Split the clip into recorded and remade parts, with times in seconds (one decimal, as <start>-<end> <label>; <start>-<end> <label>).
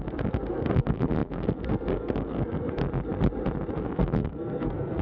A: 0.0-2.8 remade; 2.8-3.7 recorded; 3.7-5.0 remade